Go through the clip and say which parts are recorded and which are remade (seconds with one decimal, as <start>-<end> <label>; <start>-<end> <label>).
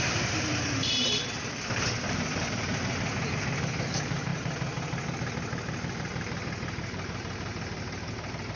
0.0-8.6 remade